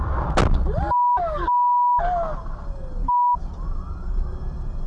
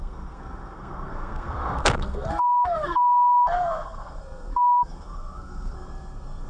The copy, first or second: second